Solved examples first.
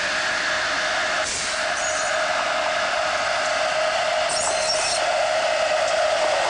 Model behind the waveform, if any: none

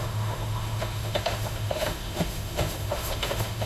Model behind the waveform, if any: autoencoder, DAC-VAE